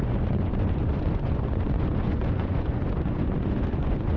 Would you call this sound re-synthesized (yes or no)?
yes